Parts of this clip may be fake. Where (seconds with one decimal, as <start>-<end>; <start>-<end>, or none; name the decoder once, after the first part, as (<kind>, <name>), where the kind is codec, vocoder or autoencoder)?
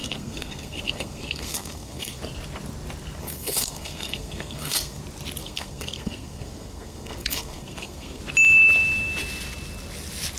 0.0-2.2 (codec, SNAC); 3.2-5.0; 5.4-8.2